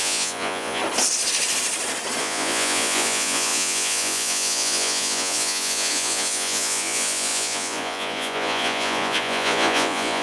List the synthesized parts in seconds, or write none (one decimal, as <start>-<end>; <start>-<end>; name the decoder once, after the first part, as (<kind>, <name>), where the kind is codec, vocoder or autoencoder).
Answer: 0.0-0.8 (vocoder, Vocos); 2.2-10.2